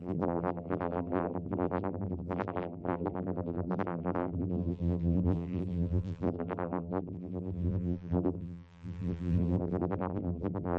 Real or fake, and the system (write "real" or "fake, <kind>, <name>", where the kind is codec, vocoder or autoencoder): fake, vocoder, BigVGAN v2